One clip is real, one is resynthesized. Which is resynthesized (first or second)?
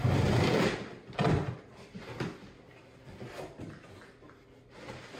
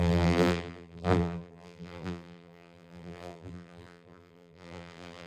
second